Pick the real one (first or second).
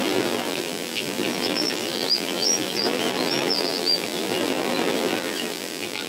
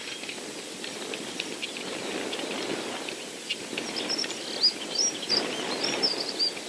second